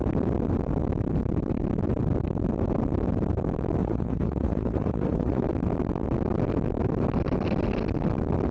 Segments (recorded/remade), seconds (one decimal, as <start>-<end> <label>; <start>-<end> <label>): 0.0-3.8 recorded; 3.8-5.4 remade; 5.4-8.5 recorded